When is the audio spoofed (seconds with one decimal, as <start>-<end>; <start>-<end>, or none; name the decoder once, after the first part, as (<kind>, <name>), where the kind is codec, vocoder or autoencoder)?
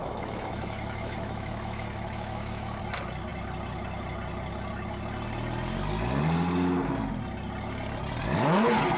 0.0-2.8 (autoencoder, DAC-VAE)